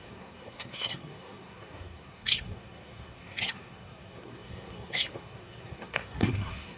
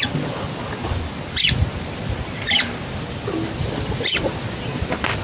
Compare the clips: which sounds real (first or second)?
second